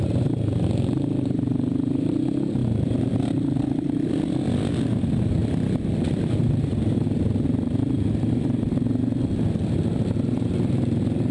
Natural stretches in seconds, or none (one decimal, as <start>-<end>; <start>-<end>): 0.0-2.6; 4.1-5.4; 9.0-11.3

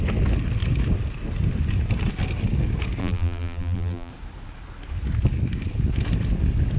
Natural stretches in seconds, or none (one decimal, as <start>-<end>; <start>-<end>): 0.0-3.0; 4.1-6.8

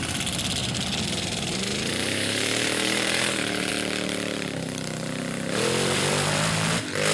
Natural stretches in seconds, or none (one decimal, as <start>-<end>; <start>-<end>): 0.0-0.6; 3.7-7.1

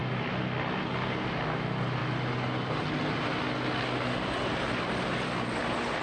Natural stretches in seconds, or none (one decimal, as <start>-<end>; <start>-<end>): 0.0-6.0

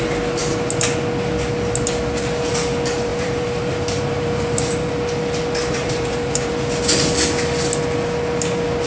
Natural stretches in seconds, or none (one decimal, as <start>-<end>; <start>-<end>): 0.0-3.1; 4.9-5.6; 6.5-8.9